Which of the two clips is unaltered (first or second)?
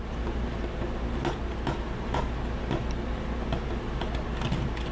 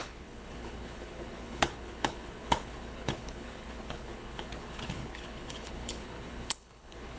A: first